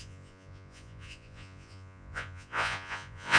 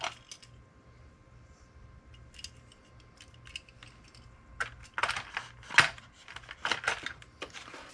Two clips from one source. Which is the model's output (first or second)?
first